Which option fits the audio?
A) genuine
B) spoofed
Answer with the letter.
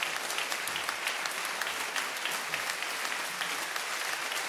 A